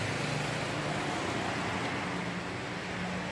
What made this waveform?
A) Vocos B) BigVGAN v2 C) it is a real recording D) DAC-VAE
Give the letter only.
C